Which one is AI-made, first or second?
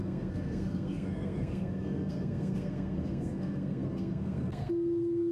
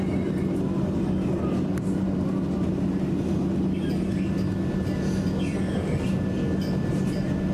first